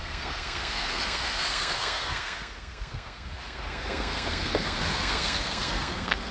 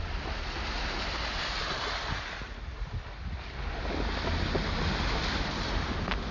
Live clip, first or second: second